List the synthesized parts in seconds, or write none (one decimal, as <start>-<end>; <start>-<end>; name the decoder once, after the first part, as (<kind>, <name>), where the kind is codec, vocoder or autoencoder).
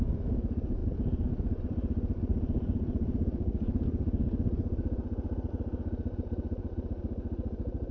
none